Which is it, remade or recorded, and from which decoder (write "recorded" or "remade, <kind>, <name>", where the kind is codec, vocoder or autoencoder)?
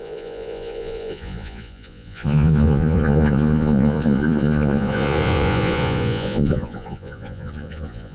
remade, vocoder, Vocos